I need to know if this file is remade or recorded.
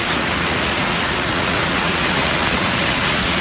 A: remade